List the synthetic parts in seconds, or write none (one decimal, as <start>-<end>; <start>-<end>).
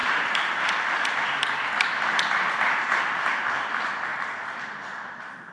0.0-0.5; 4.1-5.5